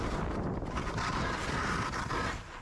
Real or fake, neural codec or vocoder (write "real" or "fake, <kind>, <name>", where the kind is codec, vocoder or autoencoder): real